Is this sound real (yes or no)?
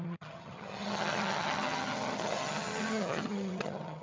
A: no